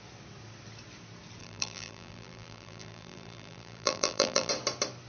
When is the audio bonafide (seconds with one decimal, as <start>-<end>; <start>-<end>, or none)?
0.0-1.4; 4.5-5.1